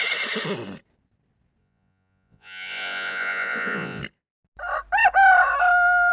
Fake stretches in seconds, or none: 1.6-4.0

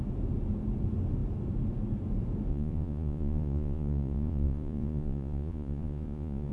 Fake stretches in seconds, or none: 2.5-6.5

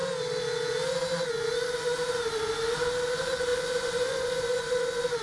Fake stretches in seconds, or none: 3.1-5.2

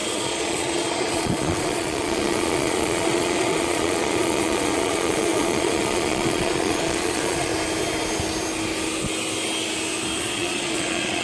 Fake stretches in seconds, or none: 0.0-7.5; 10.2-11.2

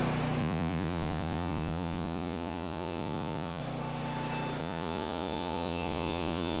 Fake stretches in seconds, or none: 0.4-3.6; 4.6-6.6

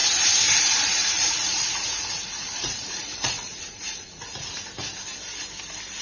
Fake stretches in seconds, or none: 1.0-4.5

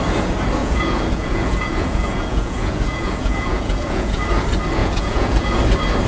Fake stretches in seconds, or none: 0.6-4.2; 4.8-5.6